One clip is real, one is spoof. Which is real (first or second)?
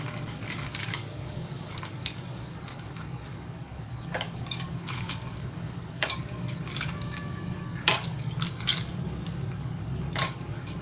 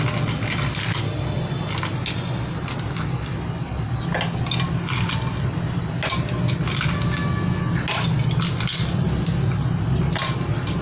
second